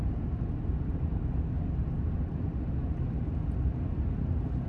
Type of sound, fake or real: real